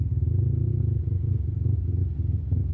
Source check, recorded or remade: recorded